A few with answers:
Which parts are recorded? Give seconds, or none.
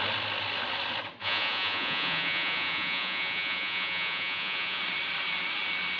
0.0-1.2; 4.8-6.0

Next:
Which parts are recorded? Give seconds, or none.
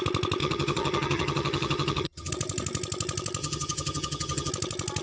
0.0-0.4; 2.3-3.4; 4.5-5.0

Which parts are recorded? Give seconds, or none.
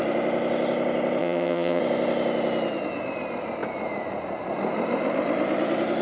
0.0-1.2; 1.8-6.0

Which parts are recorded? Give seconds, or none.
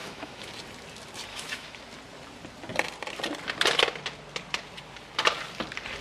0.5-1.3; 1.8-6.0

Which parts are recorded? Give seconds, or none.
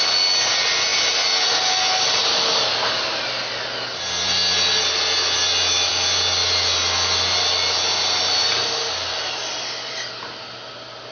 0.0-11.1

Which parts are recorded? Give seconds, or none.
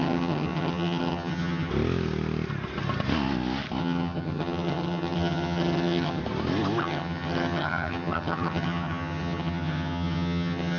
1.7-3.8; 6.2-6.8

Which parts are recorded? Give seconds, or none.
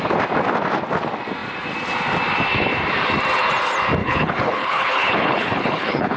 0.0-4.0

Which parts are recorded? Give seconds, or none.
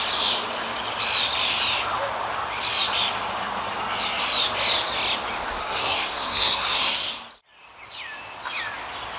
0.0-5.6; 7.1-9.2